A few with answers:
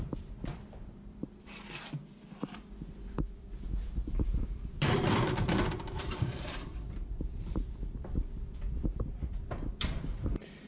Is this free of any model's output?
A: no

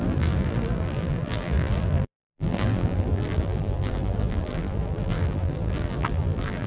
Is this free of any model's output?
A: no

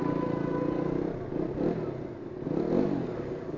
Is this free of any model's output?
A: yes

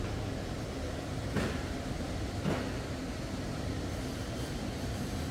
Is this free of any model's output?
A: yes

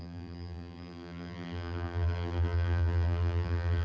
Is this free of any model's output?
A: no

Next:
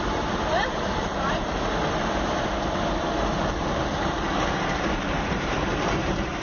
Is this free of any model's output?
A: no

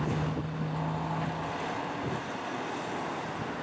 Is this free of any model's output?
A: yes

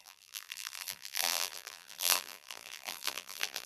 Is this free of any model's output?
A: no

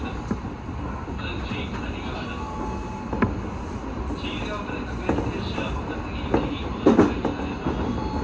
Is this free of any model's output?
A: yes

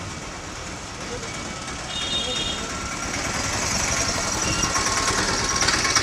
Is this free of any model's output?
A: yes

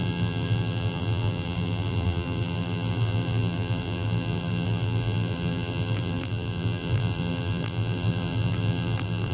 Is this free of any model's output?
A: no